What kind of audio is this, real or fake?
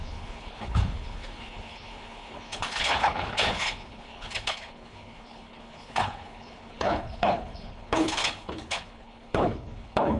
fake